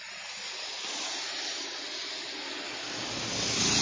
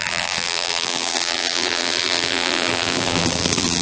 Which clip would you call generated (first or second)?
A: second